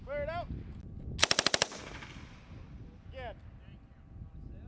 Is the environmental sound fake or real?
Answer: real